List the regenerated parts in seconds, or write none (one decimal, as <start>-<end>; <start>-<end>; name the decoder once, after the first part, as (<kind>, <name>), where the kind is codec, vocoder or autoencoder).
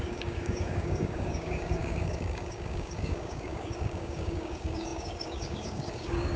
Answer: 0.0-6.4 (codec, DAC)